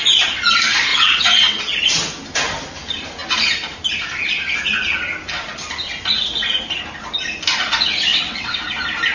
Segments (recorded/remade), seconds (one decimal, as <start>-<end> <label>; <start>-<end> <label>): 0.0-0.9 recorded; 0.9-1.6 remade; 1.6-8.1 recorded; 8.1-8.6 remade; 8.6-9.1 recorded